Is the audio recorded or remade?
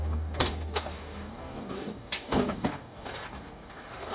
remade